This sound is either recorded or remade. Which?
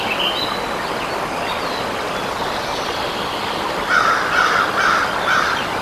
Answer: recorded